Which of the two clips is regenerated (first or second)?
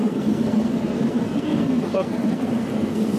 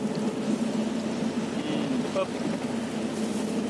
first